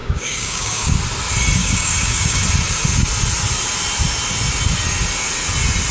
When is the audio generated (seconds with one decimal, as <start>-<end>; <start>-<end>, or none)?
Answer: 0.0-1.0; 1.6-2.4